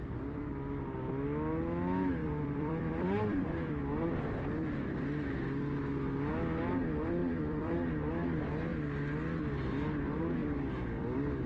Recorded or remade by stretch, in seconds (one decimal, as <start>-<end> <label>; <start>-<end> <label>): 0.0-2.2 recorded; 2.2-4.4 remade; 4.4-7.2 recorded; 7.2-8.1 remade; 8.1-10.4 recorded; 10.4-11.5 remade